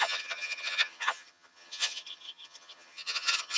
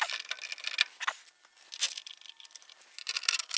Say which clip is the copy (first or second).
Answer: first